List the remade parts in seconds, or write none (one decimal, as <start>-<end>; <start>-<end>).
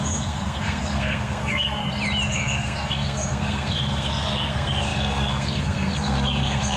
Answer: 0.0-1.8; 2.3-6.8